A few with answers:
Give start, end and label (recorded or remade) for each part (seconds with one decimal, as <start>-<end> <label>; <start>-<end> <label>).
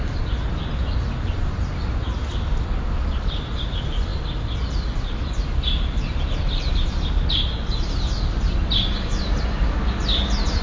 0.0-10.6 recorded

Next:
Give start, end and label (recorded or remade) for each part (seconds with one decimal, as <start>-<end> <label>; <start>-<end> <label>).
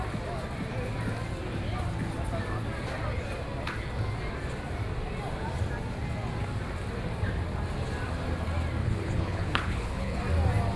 0.0-8.8 recorded; 8.8-10.2 remade; 10.2-10.8 recorded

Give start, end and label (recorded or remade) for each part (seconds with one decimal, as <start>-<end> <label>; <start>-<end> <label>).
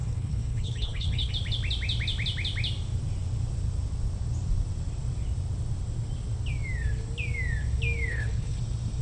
0.0-1.3 remade; 1.3-8.1 recorded; 8.1-8.6 remade; 8.6-9.0 recorded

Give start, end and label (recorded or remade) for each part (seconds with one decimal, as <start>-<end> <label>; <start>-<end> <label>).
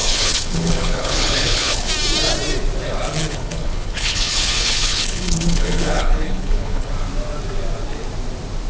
0.0-1.9 remade; 1.9-3.3 recorded; 3.3-6.9 remade; 6.9-8.7 recorded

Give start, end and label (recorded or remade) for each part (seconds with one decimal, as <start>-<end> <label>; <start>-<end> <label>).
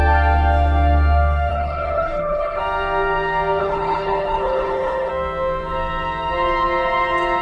0.0-1.5 recorded; 1.5-2.6 remade; 2.6-3.6 recorded; 3.6-5.1 remade; 5.1-7.4 recorded